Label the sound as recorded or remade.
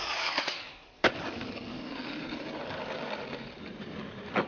remade